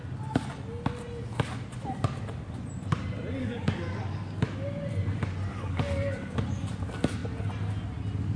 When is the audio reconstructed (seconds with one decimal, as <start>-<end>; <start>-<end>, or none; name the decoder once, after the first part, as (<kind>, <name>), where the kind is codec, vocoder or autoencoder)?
3.4-4.3 (codec, DAC); 5.5-6.4